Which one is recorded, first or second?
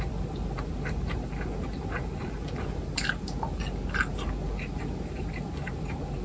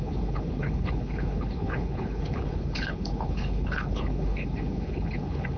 first